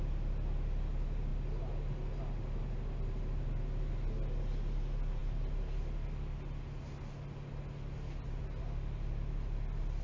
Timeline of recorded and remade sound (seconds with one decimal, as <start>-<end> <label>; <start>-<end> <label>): 0.0-10.0 recorded